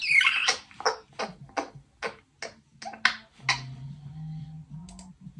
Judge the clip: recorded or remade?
recorded